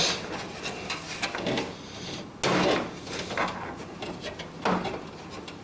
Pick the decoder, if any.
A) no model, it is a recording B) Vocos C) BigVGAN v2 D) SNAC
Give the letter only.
A